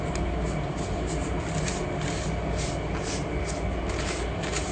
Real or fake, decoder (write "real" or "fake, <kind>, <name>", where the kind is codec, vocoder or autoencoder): real